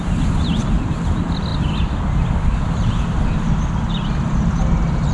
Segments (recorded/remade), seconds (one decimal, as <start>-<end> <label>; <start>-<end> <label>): 0.0-1.5 recorded; 1.5-3.2 remade; 3.2-5.1 recorded